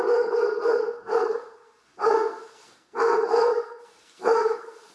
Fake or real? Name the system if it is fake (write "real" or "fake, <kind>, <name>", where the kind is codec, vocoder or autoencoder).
fake, codec, SNAC